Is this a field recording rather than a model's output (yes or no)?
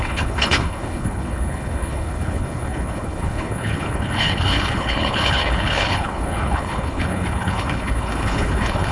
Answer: no